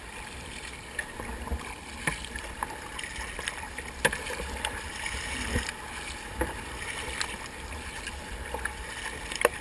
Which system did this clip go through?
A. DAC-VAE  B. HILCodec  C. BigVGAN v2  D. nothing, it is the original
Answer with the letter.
D